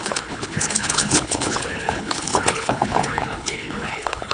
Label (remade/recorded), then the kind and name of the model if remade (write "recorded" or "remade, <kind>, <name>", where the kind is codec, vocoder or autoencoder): remade, codec, HILCodec